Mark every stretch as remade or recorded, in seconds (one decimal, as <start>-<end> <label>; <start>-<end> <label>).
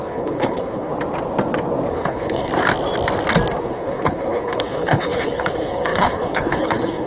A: 0.0-0.9 remade; 0.9-1.9 recorded; 1.9-2.5 remade; 2.5-3.6 recorded; 3.6-7.1 remade